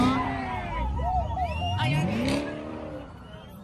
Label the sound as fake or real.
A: fake